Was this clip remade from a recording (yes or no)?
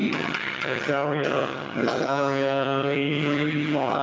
yes